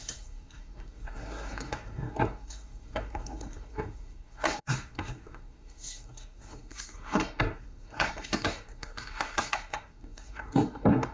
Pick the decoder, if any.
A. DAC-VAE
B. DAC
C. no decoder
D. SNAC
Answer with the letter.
D